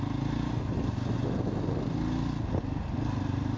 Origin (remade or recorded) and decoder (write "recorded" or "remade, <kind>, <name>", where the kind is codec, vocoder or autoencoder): recorded